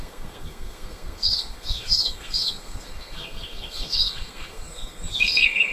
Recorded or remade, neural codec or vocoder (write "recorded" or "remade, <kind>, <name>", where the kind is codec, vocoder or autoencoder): remade, codec, SNAC